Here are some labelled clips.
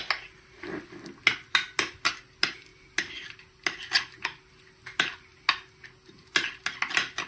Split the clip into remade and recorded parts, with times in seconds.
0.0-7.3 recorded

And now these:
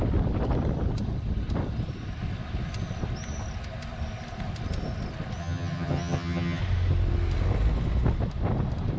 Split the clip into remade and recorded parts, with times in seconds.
0.0-5.4 recorded; 5.4-6.6 remade; 6.6-9.0 recorded

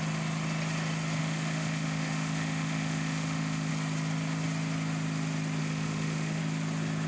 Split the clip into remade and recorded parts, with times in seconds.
0.0-1.2 recorded; 1.2-3.7 remade; 3.7-5.6 recorded; 5.6-6.4 remade; 6.4-7.1 recorded

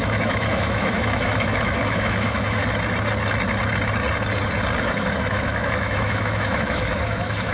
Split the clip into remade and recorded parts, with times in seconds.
0.0-2.6 remade; 2.6-4.8 recorded; 4.8-7.5 remade

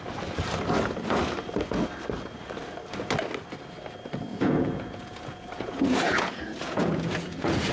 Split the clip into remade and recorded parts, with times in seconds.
0.0-4.3 recorded; 4.3-7.7 remade

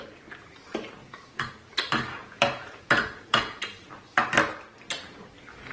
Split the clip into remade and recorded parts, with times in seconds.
0.0-1.0 recorded; 1.0-1.5 remade; 1.5-2.2 recorded; 2.2-3.6 remade; 3.6-5.7 recorded

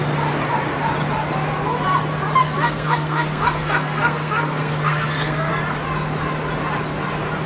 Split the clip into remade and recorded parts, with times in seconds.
0.0-2.4 recorded; 2.4-5.5 remade; 5.5-7.5 recorded